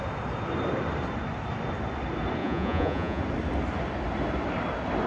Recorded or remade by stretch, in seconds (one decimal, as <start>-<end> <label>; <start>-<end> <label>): 0.0-2.4 recorded; 2.4-3.2 remade; 3.2-5.1 recorded

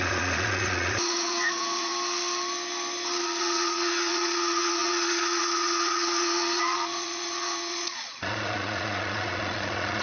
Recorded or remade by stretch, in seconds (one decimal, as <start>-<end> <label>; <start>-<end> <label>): 0.0-1.9 remade; 1.9-3.2 recorded; 3.2-10.0 remade

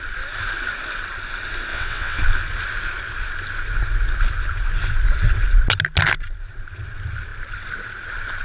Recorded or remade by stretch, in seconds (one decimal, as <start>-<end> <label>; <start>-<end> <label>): 0.0-1.7 recorded; 1.7-2.2 remade; 2.2-8.4 recorded

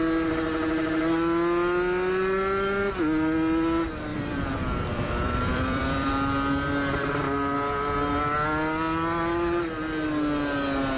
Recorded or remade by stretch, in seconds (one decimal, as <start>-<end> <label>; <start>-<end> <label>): 0.0-4.1 recorded; 4.1-6.1 remade; 6.1-11.0 recorded

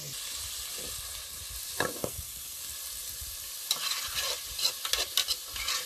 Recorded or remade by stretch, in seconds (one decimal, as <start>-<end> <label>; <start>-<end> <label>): 0.0-2.0 recorded; 2.0-2.6 remade; 2.6-5.9 recorded